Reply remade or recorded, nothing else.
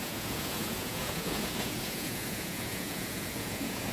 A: remade